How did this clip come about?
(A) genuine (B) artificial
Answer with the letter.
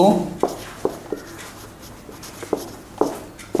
A